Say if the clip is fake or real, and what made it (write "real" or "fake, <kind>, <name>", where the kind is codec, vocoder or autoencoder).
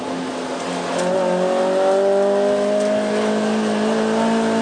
real